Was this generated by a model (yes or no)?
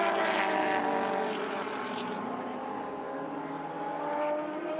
no